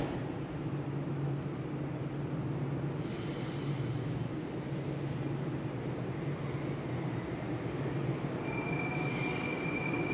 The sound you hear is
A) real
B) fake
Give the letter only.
A